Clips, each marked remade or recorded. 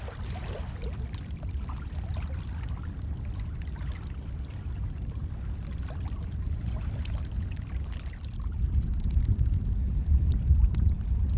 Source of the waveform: recorded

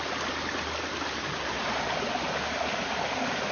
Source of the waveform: recorded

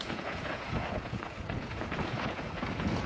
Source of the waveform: remade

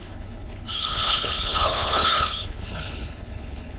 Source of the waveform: remade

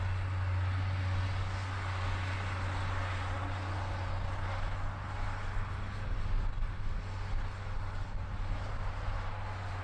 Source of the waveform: recorded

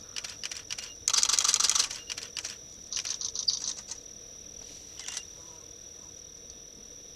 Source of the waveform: recorded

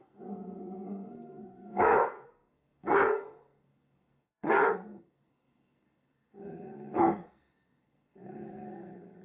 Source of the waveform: remade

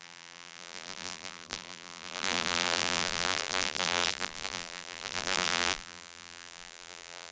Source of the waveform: remade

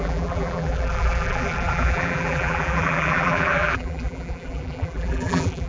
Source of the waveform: remade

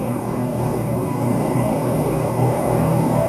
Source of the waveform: remade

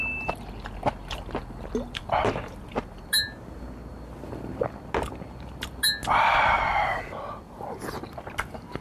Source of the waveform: recorded